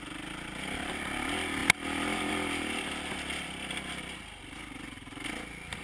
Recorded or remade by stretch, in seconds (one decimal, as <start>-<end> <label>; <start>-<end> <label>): 0.0-5.8 recorded